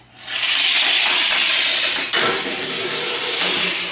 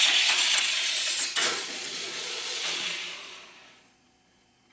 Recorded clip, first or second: first